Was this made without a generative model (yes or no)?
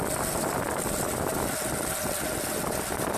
yes